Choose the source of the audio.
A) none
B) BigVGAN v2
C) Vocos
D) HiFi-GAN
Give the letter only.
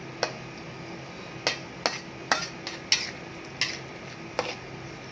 A